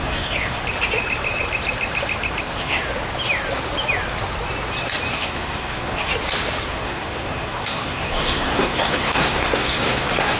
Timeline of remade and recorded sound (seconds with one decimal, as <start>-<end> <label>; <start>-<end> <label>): 0.0-0.6 remade; 0.6-2.4 recorded; 2.4-2.8 remade; 2.8-5.1 recorded; 5.1-6.1 remade; 6.1-6.7 recorded; 6.7-10.4 remade